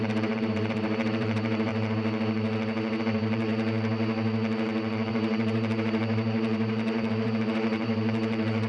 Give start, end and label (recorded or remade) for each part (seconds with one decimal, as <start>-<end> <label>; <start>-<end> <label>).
0.0-1.7 remade; 1.7-3.0 recorded; 3.0-3.5 remade; 3.5-5.1 recorded; 5.1-8.7 remade